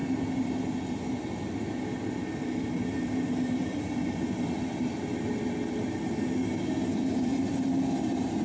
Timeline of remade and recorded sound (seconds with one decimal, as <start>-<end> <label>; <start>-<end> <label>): 0.0-8.4 recorded